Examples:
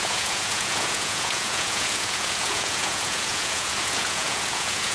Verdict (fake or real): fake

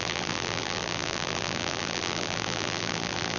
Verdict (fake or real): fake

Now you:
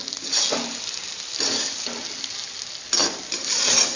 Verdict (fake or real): real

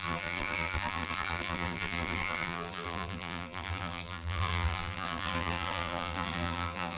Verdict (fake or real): fake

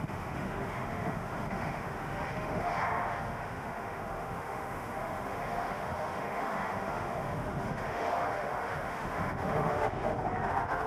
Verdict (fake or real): fake